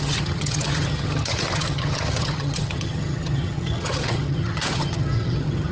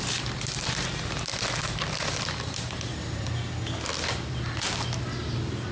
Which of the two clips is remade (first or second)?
first